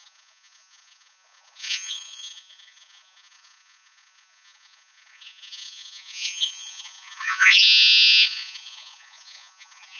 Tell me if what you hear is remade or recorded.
remade